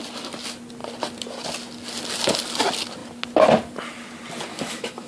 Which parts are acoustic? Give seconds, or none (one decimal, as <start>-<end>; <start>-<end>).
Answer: 0.0-4.5